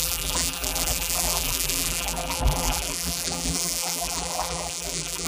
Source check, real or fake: fake